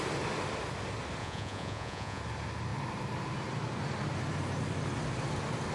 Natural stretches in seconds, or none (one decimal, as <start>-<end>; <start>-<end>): 0.0-1.2; 2.2-5.7